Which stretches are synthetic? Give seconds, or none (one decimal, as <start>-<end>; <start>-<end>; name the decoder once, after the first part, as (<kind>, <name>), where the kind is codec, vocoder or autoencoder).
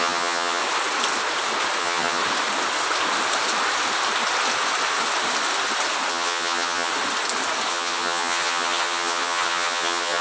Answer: 0.0-0.6 (vocoder, HiFi-GAN); 1.8-2.2; 6.1-6.9; 7.7-10.2